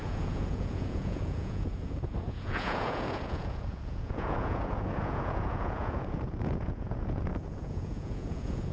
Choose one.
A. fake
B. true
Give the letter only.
A